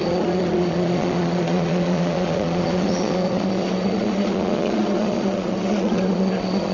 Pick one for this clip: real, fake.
fake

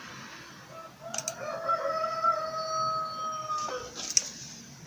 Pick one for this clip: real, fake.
real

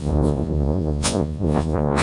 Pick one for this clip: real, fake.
fake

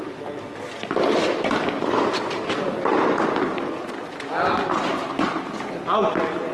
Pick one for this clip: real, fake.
real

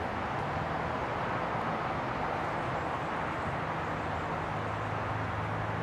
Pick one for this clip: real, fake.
real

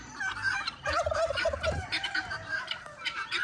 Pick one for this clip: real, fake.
fake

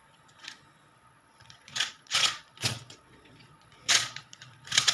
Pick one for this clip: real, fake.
fake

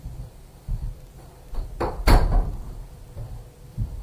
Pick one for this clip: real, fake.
fake